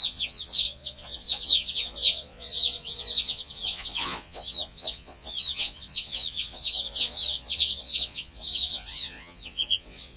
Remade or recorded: remade